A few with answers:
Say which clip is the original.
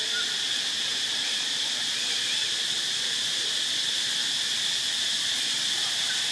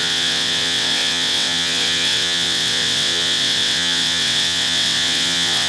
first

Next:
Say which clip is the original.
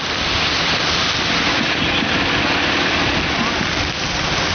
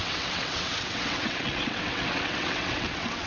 first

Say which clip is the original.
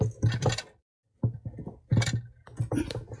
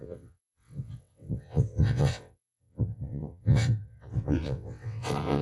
first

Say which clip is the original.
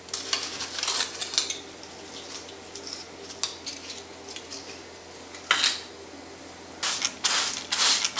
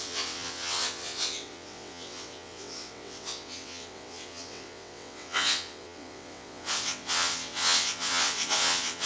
first